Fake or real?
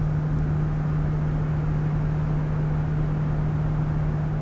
real